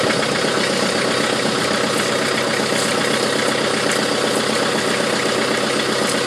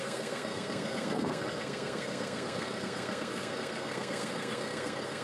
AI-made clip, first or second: second